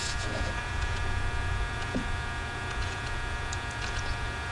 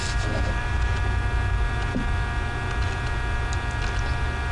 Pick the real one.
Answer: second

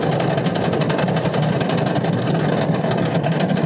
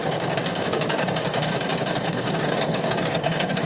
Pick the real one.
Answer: first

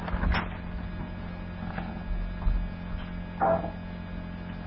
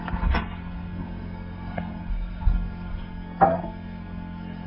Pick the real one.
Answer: first